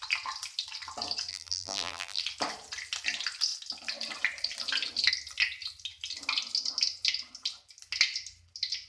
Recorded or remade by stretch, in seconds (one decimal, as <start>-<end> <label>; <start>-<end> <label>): 0.0-1.3 recorded; 1.3-2.2 remade; 2.2-8.9 recorded